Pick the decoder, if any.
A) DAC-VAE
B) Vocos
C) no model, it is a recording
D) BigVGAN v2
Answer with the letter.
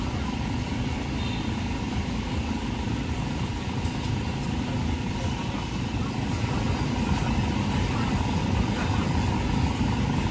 C